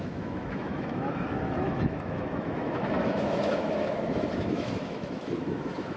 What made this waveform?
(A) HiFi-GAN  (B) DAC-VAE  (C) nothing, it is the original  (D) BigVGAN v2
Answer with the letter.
B